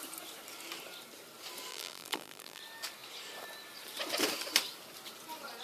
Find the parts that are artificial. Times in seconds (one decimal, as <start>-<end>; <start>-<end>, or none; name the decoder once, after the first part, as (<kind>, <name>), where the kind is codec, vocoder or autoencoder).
1.7-2.6 (vocoder, BigVGAN v2)

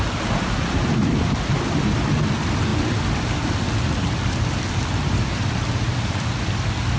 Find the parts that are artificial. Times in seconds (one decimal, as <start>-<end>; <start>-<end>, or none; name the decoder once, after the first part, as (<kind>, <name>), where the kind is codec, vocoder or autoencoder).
2.7-7.0 (vocoder, BigVGAN v2)

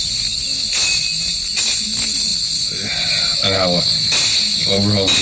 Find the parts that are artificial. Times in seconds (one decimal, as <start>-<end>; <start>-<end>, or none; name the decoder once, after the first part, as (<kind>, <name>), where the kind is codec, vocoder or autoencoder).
none

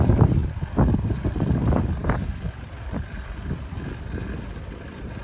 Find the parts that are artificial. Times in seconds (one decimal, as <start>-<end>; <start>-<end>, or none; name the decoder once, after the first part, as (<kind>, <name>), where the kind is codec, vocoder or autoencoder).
none

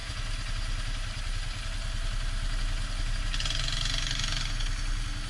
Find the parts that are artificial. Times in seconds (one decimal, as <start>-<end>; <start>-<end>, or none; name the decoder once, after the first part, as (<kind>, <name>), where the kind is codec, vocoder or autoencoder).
none

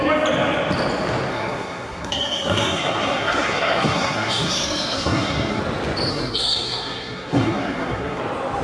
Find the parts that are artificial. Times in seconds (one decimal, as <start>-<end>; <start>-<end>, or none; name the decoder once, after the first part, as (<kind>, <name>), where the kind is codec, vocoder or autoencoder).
1.3-5.6 (codec, SNAC); 6.1-8.2